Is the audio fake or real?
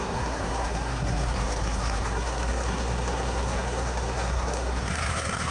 fake